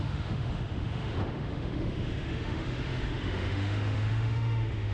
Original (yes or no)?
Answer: no